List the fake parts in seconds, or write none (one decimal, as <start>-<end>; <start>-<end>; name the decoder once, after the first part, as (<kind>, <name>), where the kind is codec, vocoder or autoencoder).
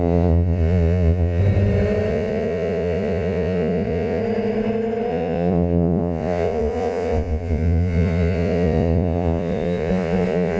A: 0.0-1.4 (vocoder, Vocos); 2.1-4.2; 5.1-10.6